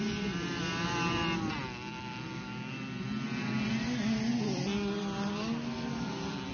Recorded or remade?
recorded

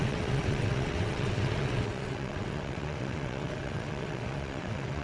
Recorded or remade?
remade